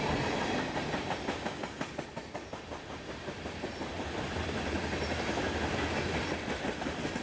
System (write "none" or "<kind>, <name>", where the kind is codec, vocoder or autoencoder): none